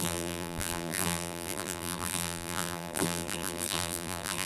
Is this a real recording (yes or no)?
no